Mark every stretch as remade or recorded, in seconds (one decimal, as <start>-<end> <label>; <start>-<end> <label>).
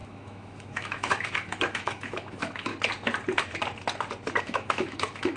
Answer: 0.0-2.7 remade; 2.7-4.4 recorded; 4.4-5.4 remade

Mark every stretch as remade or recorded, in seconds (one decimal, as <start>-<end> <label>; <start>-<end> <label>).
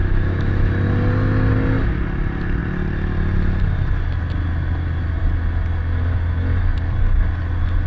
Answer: 0.0-0.7 remade; 0.7-7.9 recorded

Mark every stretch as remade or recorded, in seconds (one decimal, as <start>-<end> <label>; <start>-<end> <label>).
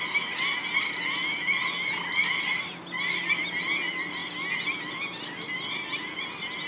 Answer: 0.0-6.7 recorded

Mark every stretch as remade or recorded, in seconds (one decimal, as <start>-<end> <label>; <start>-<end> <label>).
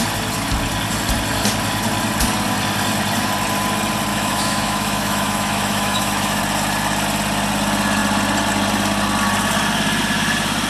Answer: 0.0-4.1 recorded; 4.1-6.4 remade; 6.4-10.7 recorded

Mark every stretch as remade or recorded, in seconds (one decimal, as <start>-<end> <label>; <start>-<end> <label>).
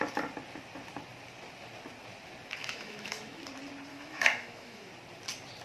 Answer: 0.0-2.6 recorded; 2.6-3.4 remade; 3.4-3.9 recorded; 3.9-4.9 remade; 4.9-5.6 recorded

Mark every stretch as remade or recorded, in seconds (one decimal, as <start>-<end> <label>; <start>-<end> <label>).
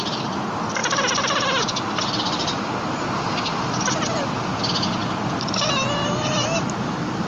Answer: 0.0-7.3 recorded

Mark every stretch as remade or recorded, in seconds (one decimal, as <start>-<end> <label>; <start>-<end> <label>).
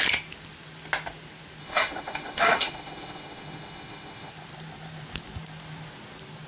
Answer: 0.0-1.6 recorded; 1.6-4.3 remade; 4.3-6.5 recorded